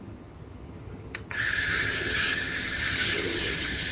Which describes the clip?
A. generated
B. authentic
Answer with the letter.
A